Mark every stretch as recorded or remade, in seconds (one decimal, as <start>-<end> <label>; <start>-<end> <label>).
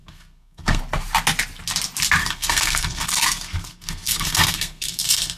0.0-0.8 remade; 0.8-2.2 recorded; 2.2-5.4 remade